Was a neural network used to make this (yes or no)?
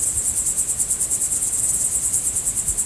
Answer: no